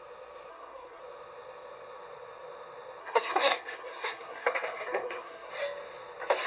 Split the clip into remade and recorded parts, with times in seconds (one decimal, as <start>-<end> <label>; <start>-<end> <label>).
0.0-0.5 recorded; 0.5-1.0 remade; 1.0-3.0 recorded; 3.0-5.5 remade; 5.5-6.5 recorded